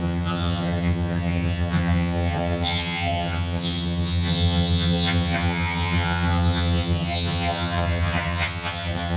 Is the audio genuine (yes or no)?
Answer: no